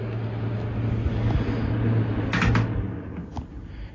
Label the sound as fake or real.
real